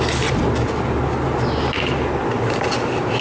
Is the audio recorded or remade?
recorded